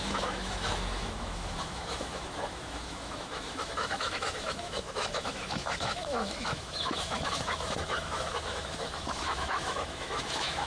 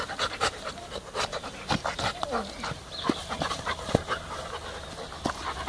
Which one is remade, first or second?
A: first